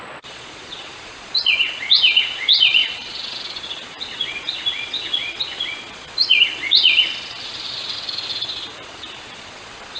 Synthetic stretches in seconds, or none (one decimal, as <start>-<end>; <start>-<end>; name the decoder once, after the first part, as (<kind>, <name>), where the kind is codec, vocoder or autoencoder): 0.0-10.0 (vocoder, Vocos)